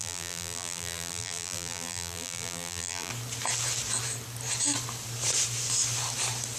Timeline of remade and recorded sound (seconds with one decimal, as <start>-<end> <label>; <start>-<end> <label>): 0.0-3.1 remade; 3.1-6.6 recorded